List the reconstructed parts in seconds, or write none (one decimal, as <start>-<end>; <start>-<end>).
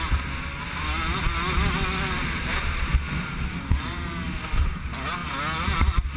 none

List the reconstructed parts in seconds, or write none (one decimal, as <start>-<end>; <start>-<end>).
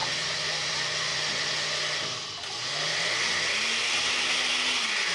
none